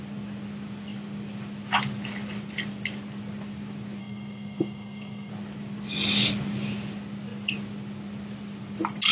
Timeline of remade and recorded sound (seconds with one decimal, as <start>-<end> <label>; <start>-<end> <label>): 0.0-4.0 recorded; 4.0-5.3 remade; 5.3-9.1 recorded